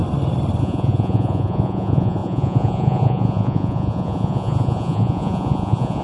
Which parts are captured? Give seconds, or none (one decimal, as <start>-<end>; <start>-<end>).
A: 0.0-0.6